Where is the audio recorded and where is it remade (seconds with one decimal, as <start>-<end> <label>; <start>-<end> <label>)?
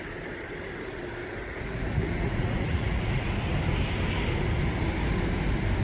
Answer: 0.0-1.4 recorded; 1.4-3.3 remade; 3.3-5.8 recorded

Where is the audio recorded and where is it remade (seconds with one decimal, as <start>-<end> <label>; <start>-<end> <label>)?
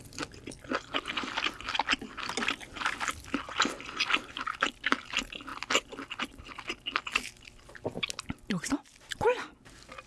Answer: 0.0-10.1 recorded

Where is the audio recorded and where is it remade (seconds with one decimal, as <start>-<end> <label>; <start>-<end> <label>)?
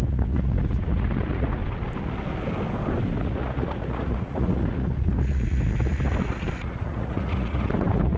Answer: 0.0-1.6 remade; 1.6-3.2 recorded; 3.2-8.2 remade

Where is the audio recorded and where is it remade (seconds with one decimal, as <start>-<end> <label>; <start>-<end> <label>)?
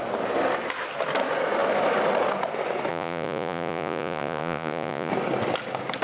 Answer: 0.0-2.9 recorded; 2.9-5.1 remade; 5.1-6.0 recorded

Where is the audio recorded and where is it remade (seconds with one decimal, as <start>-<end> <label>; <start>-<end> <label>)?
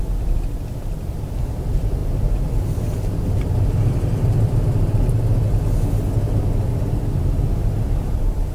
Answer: 0.0-8.5 recorded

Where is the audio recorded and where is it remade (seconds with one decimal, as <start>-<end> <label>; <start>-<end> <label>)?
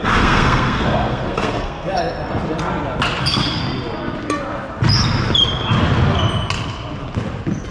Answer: 0.0-2.0 remade; 2.0-3.2 recorded; 3.2-3.6 remade; 3.6-7.7 recorded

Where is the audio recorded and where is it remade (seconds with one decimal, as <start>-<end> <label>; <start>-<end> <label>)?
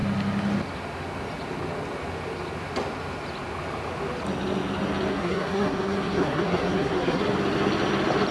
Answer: 0.0-5.1 recorded; 5.1-7.2 remade; 7.2-8.3 recorded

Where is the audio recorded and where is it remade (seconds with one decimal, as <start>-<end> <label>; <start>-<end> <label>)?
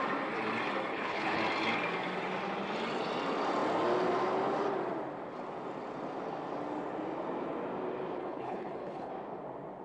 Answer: 0.0-0.9 recorded; 0.9-1.4 remade; 1.4-8.2 recorded; 8.2-9.1 remade; 9.1-9.8 recorded